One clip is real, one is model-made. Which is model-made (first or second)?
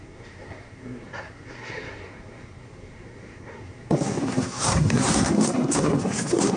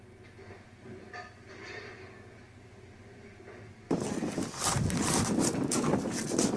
first